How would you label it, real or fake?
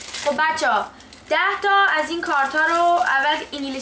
real